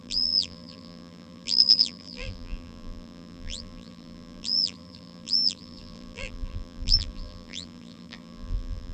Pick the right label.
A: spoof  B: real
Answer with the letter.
A